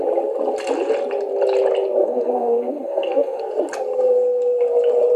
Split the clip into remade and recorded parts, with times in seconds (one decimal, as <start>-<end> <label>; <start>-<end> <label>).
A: 0.0-2.0 recorded; 2.0-3.4 remade; 3.4-5.2 recorded